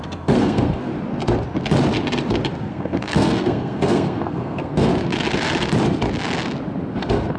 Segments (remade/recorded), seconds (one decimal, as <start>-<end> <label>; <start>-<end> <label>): 0.0-0.9 remade; 0.9-2.6 recorded; 2.6-4.9 remade; 4.9-6.9 recorded; 6.9-7.4 remade